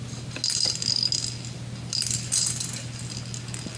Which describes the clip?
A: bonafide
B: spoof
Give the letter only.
A